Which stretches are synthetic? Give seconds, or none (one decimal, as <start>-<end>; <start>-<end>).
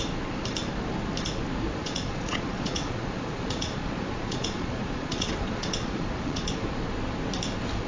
1.8-6.5